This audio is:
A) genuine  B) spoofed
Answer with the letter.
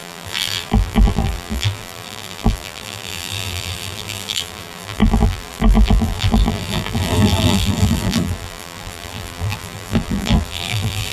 B